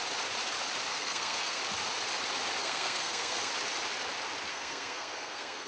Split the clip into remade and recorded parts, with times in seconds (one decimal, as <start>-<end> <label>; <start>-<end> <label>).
0.0-0.9 recorded; 0.9-1.6 remade; 1.6-2.6 recorded; 2.6-3.5 remade; 3.5-4.5 recorded; 4.5-5.7 remade